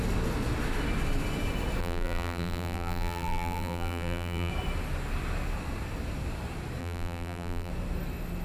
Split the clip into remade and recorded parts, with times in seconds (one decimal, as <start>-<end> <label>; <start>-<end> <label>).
0.0-1.8 recorded; 1.8-4.5 remade; 4.5-6.8 recorded; 6.8-7.7 remade; 7.7-8.4 recorded